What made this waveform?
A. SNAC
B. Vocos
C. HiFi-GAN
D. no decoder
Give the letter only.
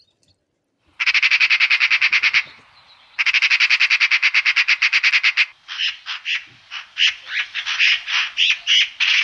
D